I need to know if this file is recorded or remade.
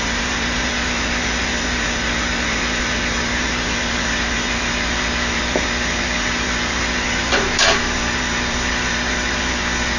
remade